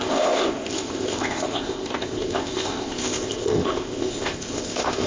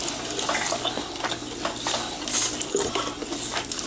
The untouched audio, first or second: second